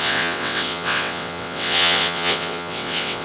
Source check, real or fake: fake